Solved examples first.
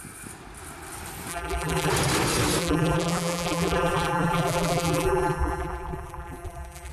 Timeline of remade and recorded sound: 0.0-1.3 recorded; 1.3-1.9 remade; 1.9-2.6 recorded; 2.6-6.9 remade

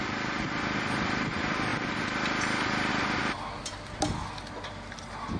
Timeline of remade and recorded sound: 0.0-5.4 recorded

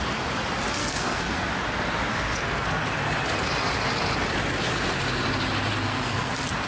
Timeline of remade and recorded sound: 0.0-0.8 recorded; 0.8-1.5 remade; 1.5-2.1 recorded; 2.1-2.9 remade; 2.9-5.8 recorded; 5.8-6.3 remade; 6.3-6.7 recorded